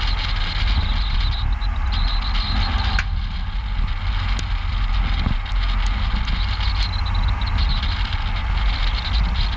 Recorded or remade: recorded